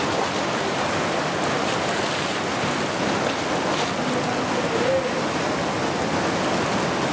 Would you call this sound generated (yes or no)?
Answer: no